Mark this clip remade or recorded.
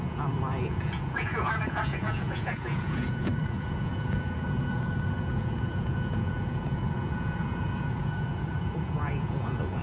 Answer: remade